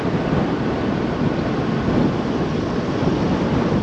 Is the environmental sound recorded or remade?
recorded